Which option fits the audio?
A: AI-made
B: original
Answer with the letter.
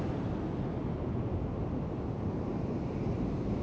B